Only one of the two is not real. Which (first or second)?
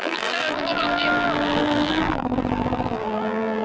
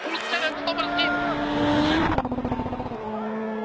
first